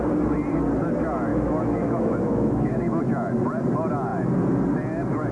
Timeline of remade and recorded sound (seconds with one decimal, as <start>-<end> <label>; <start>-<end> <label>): 0.0-1.3 recorded; 1.3-3.0 remade; 3.0-5.3 recorded